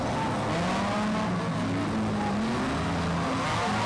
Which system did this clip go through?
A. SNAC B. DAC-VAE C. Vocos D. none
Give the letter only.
D